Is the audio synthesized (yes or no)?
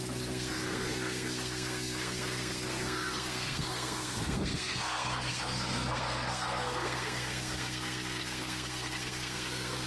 yes